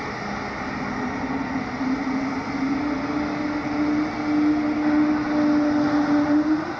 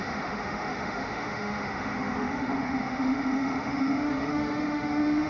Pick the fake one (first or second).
second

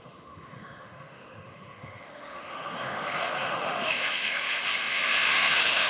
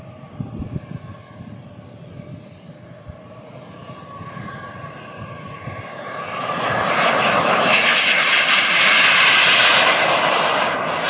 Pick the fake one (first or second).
first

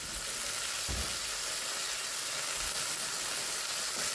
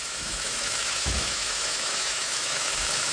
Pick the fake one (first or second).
second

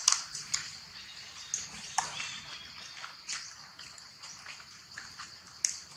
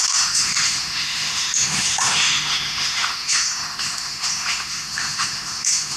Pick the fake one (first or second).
second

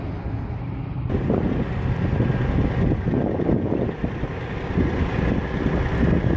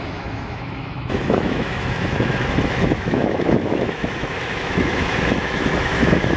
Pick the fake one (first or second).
second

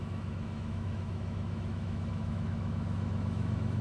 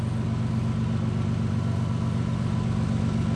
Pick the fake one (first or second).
first